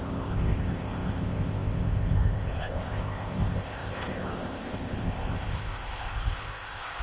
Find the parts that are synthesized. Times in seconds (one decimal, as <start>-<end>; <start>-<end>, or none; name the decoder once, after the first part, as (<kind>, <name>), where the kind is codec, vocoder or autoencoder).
0.0-7.0 (codec, ZipCodec)